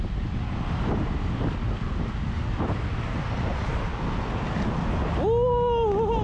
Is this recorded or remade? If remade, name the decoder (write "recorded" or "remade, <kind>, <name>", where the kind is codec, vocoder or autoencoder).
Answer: recorded